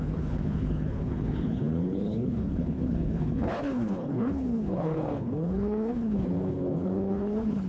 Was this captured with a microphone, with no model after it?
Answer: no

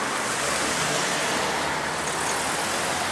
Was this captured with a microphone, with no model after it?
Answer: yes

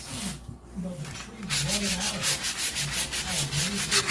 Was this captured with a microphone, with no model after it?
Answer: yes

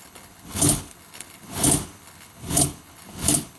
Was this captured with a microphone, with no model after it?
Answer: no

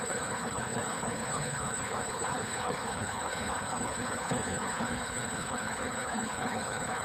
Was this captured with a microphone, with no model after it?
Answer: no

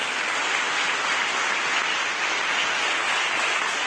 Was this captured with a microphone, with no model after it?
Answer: yes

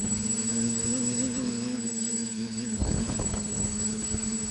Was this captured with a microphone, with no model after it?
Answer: no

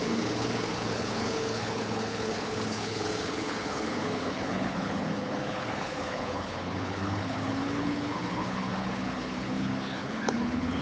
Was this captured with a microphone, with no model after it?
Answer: no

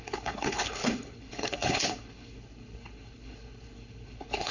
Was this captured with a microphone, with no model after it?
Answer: no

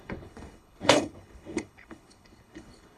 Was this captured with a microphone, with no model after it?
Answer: no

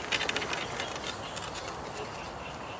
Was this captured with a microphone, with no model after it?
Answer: yes